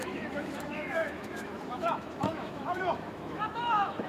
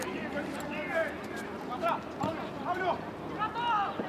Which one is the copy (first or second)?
first